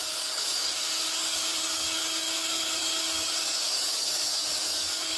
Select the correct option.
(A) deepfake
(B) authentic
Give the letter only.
A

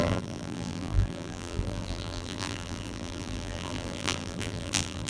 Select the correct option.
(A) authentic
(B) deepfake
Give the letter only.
B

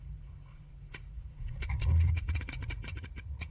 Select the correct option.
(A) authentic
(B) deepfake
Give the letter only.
B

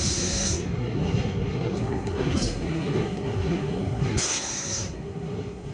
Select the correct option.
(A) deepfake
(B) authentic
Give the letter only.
A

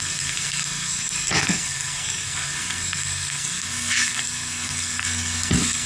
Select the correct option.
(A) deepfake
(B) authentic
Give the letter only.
A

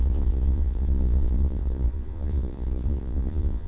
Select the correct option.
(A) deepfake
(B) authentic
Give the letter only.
A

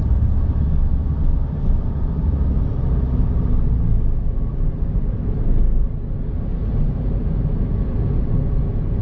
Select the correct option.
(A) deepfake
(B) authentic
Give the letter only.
B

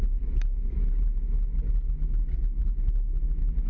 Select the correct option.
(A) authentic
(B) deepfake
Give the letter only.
A